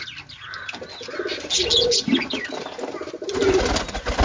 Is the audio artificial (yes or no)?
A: no